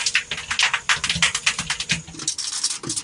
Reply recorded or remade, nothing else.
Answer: recorded